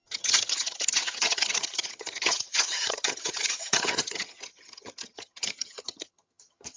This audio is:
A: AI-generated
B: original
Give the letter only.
A